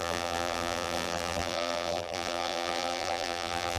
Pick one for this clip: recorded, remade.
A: remade